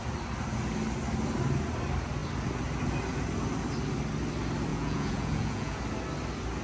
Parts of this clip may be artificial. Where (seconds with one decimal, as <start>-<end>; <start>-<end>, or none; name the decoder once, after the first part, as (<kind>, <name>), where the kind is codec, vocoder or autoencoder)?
4.7-5.8 (vocoder, Vocos)